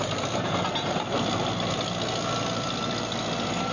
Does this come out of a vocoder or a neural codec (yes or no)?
no